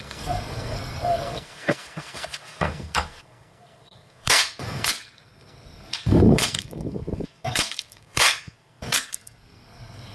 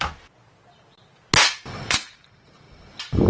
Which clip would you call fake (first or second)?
first